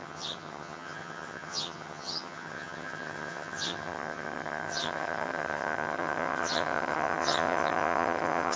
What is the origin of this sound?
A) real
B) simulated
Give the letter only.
B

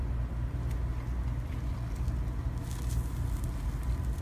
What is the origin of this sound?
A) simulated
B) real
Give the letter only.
B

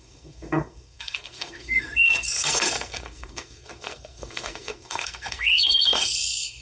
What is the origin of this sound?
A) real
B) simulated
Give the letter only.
B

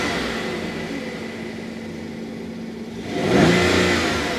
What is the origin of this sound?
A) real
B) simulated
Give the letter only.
A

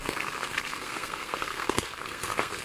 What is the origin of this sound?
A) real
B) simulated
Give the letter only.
B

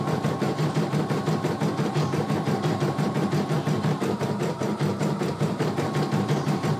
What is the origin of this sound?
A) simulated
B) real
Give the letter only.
A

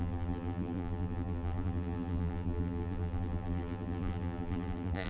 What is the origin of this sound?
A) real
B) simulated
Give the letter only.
B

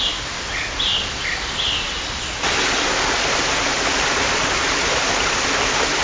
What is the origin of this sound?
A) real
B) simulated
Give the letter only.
A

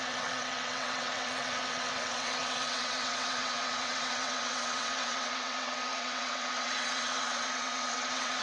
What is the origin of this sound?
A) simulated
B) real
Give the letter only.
A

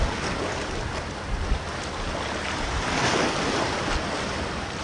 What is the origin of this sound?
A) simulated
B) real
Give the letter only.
B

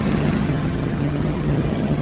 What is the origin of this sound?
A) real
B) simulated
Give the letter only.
B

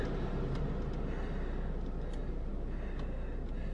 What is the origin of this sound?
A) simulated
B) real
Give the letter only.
B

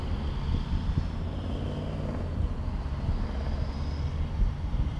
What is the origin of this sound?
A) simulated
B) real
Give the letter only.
B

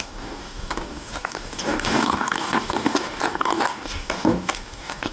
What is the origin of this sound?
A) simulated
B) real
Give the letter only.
A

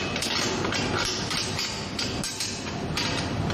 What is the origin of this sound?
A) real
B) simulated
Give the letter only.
A